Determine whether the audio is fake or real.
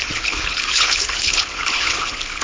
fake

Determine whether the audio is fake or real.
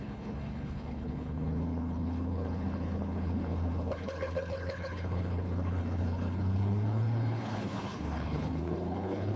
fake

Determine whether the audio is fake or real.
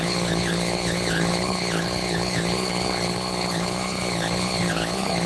fake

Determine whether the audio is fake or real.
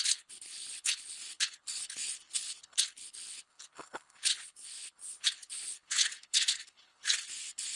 fake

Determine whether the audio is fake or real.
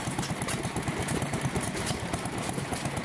real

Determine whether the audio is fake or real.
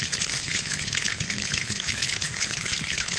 fake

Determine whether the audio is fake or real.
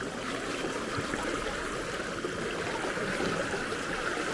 real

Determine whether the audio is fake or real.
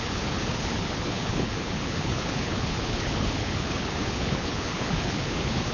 fake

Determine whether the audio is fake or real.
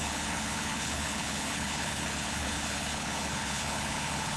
fake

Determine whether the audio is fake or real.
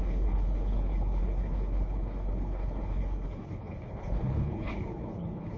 fake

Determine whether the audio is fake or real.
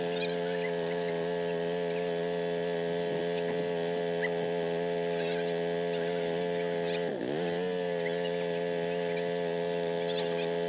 real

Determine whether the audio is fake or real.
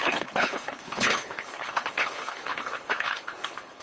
fake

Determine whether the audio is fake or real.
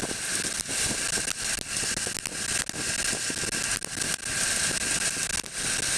real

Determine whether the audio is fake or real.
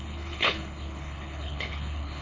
fake